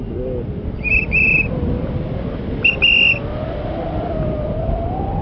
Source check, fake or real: real